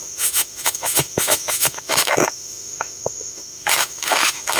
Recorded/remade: remade